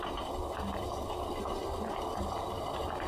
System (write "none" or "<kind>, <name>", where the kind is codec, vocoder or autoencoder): none